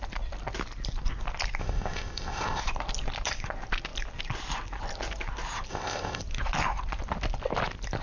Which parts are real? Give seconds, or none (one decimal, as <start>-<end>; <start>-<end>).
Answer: 0.0-1.6; 2.6-5.7; 6.2-8.0